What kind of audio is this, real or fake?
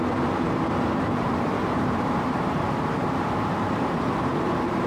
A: fake